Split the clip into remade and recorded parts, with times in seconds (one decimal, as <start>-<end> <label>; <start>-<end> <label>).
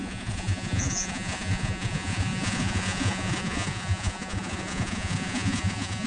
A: 0.0-6.1 remade